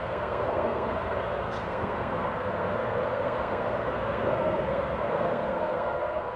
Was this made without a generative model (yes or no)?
no